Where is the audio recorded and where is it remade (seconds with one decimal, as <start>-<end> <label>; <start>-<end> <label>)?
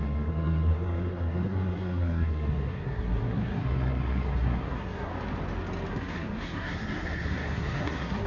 0.0-5.1 remade; 5.1-5.9 recorded; 5.9-8.3 remade